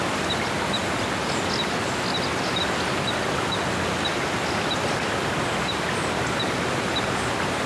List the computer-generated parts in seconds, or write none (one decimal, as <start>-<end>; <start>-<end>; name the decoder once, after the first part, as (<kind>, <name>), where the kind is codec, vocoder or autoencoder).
none